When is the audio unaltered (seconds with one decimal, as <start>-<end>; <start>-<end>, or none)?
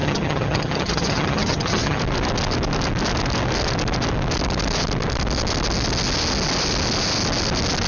2.0-7.9